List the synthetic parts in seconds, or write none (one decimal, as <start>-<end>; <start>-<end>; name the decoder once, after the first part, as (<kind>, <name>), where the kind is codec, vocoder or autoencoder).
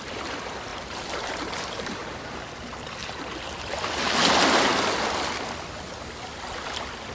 0.7-2.1 (vocoder, BigVGAN v2); 3.0-3.6